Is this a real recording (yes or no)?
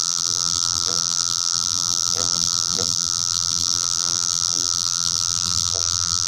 no